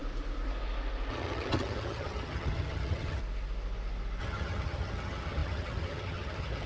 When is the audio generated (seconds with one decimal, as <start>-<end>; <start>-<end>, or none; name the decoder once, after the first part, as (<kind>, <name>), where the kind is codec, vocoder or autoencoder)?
1.1-3.2 (vocoder, HiFi-GAN); 4.2-6.7